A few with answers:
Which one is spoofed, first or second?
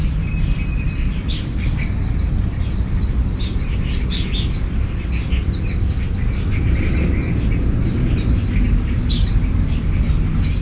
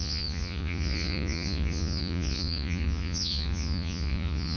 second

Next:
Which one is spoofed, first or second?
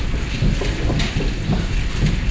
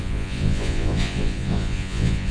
second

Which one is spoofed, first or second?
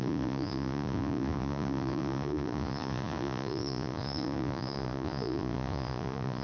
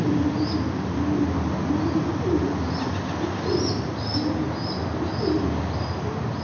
first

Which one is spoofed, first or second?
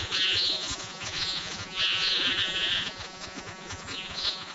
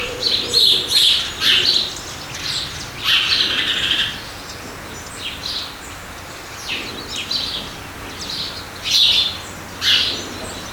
first